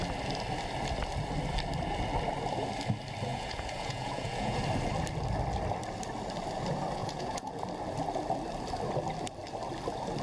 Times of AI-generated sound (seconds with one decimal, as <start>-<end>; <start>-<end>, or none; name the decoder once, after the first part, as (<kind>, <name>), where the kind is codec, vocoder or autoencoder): 3.3-4.6 (vocoder, Vocos); 7.0-7.6